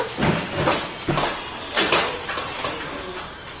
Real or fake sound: real